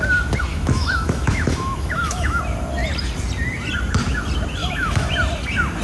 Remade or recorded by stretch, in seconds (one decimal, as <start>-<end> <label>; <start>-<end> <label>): 0.0-0.5 recorded; 0.5-2.4 remade; 2.4-4.6 recorded; 4.6-5.1 remade; 5.1-5.8 recorded